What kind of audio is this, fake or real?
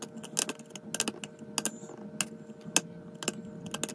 real